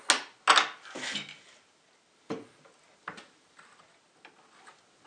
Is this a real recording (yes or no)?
yes